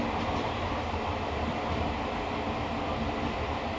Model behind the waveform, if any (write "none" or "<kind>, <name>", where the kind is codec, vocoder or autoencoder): none